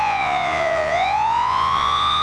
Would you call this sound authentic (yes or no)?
no